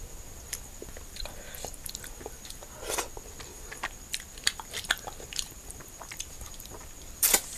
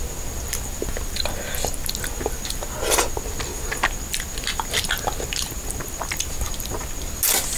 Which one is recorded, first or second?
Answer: second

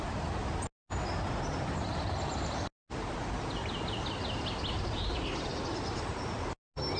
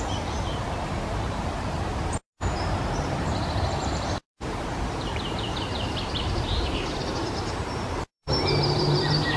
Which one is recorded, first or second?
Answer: first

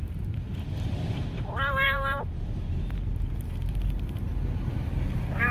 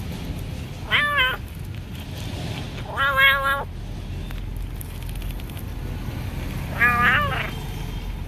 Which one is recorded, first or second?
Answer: second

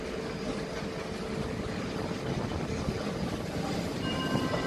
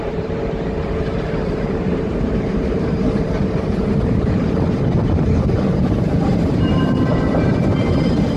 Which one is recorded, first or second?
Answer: first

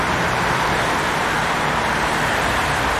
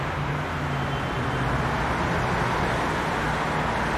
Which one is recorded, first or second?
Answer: second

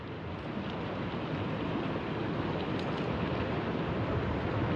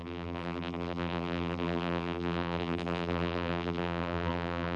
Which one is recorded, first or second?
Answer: first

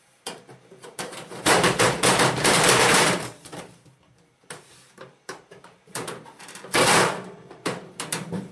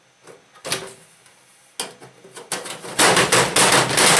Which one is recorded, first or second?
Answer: second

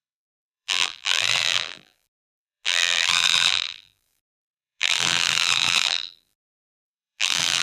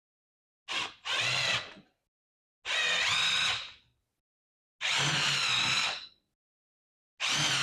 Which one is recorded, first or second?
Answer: second